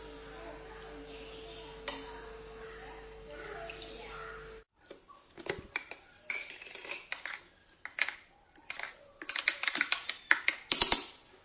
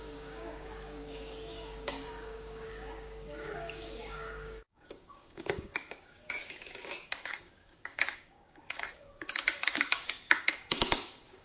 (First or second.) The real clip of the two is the first